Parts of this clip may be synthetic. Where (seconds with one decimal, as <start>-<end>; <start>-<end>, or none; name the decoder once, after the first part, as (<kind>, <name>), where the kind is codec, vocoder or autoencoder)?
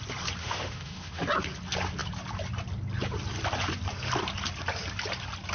0.4-1.2 (autoencoder, DAC-VAE)